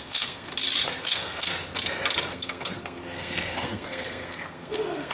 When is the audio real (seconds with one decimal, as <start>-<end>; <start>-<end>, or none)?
0.5-1.0; 1.5-2.3